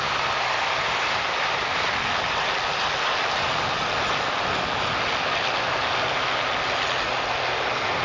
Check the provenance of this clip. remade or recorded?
recorded